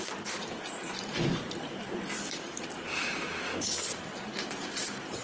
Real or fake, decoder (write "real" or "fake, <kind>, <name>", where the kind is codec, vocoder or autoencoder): fake, vocoder, BigVGAN v2